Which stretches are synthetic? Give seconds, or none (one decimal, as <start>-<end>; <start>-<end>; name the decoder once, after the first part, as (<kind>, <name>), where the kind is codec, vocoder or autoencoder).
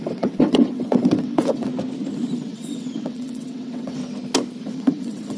0.0-1.7 (vocoder, WaveNeXt); 2.4-4.0; 4.6-5.4